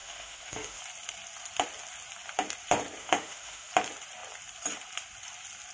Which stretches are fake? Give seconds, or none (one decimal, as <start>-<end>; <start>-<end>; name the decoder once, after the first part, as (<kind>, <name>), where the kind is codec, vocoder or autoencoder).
0.0-0.8 (autoencoder, DAC-VAE); 3.0-3.7